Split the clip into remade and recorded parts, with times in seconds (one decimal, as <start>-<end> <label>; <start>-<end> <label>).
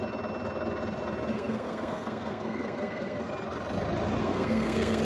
0.0-1.3 recorded; 1.3-3.3 remade; 3.3-4.2 recorded; 4.2-5.0 remade